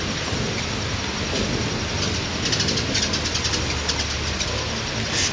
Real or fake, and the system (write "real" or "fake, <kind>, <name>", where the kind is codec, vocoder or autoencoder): real